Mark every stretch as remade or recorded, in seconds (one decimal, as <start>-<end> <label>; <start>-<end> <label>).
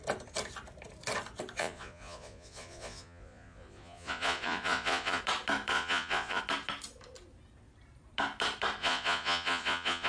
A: 0.0-1.6 recorded; 1.6-5.2 remade; 5.2-5.7 recorded; 5.7-6.4 remade; 6.4-8.8 recorded; 8.8-10.1 remade